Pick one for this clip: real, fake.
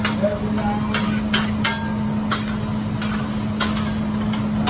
real